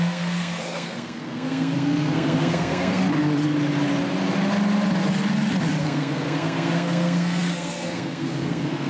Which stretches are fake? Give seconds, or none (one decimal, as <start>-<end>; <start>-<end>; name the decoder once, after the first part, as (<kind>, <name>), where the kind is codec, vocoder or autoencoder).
0.0-3.0 (codec, SNAC); 5.8-8.9